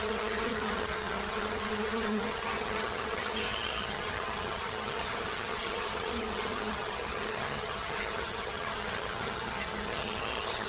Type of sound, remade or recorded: remade